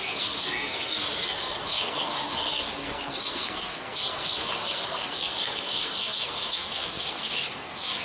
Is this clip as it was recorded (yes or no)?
no